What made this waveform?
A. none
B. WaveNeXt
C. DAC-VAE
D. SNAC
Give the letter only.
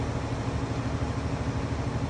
A